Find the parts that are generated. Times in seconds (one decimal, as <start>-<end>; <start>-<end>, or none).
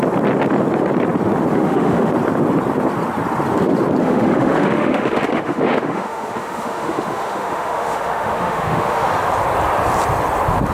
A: 1.5-2.1; 4.0-9.1